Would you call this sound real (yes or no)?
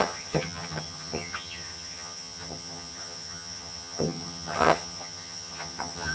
no